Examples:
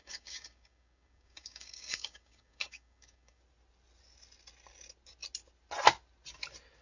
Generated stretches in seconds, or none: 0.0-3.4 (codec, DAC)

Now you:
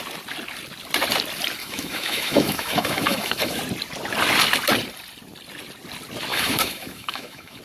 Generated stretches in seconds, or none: 1.6-3.6 (autoencoder, DAC-VAE); 6.3-7.6